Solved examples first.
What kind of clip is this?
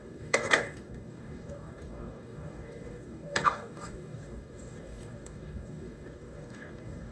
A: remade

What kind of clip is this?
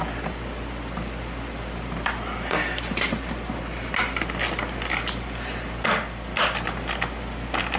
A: recorded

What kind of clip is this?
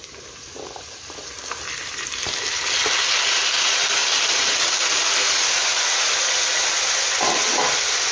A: recorded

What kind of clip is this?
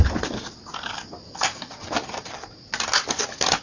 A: recorded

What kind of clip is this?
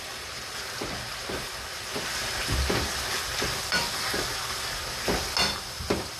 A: recorded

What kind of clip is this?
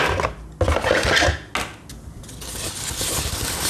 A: recorded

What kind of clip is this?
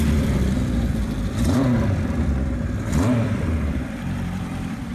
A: remade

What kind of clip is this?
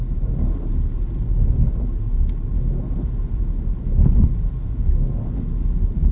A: recorded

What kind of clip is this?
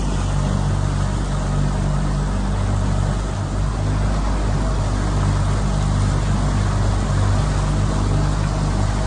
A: recorded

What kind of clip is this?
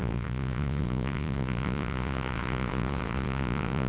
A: remade